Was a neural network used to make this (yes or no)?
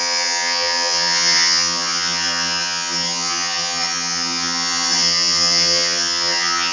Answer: yes